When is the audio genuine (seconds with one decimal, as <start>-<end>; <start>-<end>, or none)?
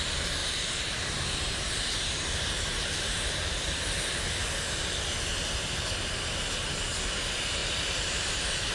0.0-0.4; 4.4-7.6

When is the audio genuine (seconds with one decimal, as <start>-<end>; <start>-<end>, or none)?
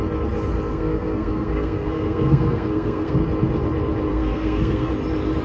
0.0-0.7; 3.2-4.1; 4.9-5.4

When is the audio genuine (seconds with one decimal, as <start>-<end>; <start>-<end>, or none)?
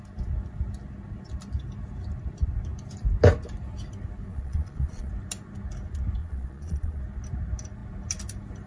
0.0-4.3; 5.1-6.2; 7.0-8.7